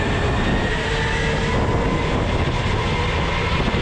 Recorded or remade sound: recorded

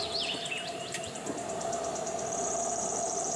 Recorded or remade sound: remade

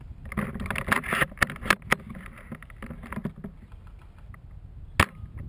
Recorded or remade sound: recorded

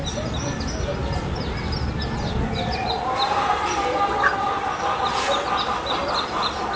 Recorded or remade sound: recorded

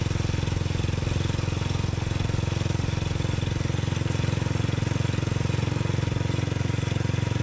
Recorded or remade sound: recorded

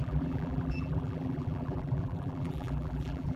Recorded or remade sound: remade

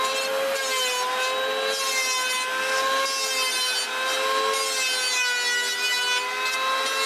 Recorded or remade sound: recorded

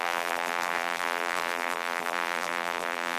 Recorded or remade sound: remade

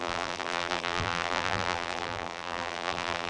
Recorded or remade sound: remade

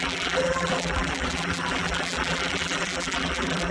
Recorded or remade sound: remade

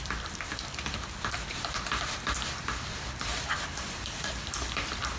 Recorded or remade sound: remade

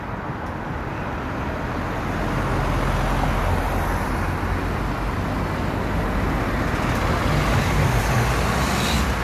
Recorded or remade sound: recorded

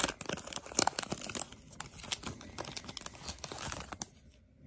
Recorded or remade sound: recorded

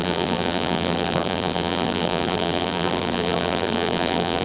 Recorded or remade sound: remade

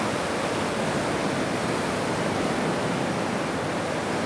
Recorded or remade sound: recorded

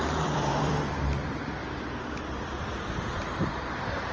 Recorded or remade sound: remade